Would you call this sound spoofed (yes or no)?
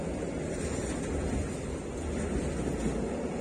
no